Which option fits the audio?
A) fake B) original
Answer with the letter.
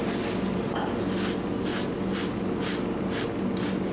B